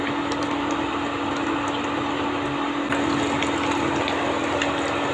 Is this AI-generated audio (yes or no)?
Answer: no